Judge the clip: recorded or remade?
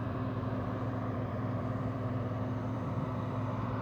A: remade